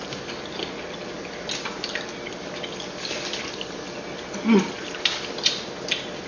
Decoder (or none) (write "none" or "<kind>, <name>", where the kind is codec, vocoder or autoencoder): none